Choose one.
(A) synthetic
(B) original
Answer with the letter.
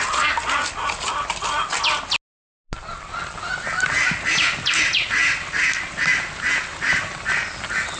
B